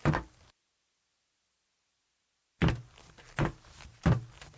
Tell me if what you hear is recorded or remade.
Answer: recorded